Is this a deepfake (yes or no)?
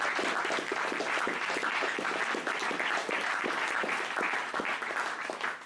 no